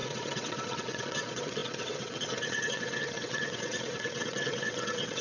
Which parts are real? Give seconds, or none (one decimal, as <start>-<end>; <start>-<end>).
none